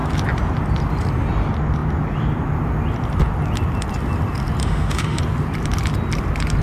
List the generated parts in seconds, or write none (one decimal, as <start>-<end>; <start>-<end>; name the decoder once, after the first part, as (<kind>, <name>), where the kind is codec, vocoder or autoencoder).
4.6-5.2 (autoencoder, DAC-VAE)